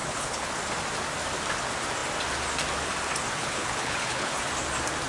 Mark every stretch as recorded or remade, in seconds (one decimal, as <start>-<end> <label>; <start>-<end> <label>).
0.0-0.6 remade; 0.6-3.4 recorded; 3.4-4.5 remade; 4.5-5.1 recorded